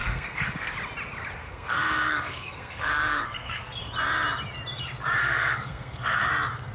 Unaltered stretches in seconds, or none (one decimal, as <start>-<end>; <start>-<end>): 0.7-1.4; 3.8-5.2; 6.3-6.7